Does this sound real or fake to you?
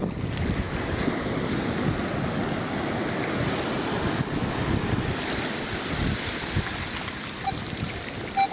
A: real